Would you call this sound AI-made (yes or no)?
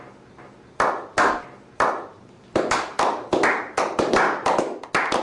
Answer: no